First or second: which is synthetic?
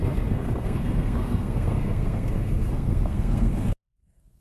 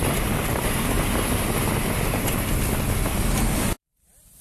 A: first